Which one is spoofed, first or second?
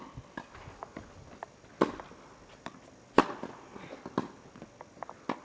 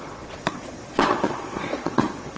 second